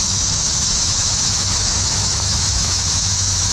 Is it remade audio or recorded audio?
remade